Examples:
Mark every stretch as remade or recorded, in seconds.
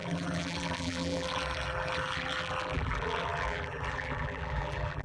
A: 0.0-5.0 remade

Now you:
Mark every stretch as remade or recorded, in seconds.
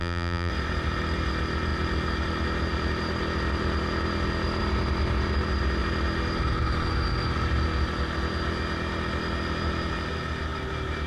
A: 0.0-0.5 remade; 0.5-11.1 recorded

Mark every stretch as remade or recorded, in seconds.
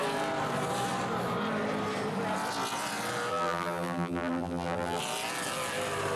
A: 0.0-3.3 recorded; 3.3-5.0 remade; 5.0-6.2 recorded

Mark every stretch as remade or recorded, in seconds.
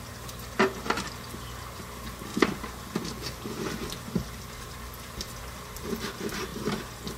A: 0.0-2.3 recorded; 2.3-4.4 remade; 4.4-5.4 recorded; 5.4-6.0 remade; 6.0-7.2 recorded